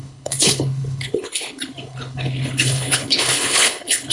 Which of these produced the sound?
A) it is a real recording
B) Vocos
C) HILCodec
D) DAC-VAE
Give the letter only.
C